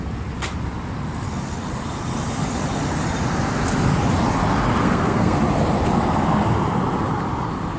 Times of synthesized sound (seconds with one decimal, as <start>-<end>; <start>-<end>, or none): 4.8-5.4